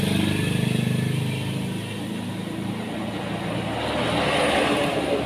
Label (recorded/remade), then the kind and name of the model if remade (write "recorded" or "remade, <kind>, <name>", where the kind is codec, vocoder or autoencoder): recorded